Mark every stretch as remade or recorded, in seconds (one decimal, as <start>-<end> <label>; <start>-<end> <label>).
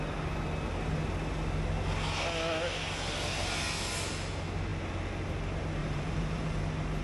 0.0-5.8 recorded; 5.8-6.6 remade; 6.6-7.0 recorded